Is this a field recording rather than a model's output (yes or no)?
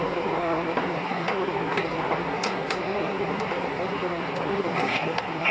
no